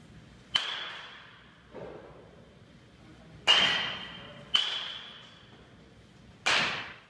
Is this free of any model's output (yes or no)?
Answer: yes